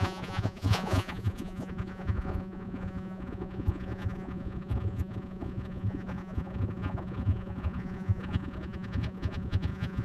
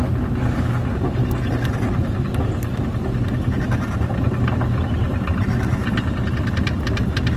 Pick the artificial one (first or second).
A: first